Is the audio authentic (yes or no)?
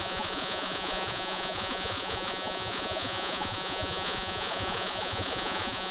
no